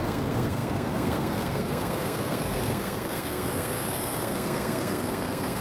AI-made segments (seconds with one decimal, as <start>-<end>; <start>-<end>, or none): 0.0-5.6